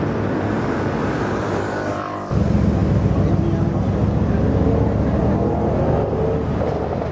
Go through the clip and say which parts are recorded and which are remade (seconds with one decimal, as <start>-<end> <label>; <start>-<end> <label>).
0.0-7.1 recorded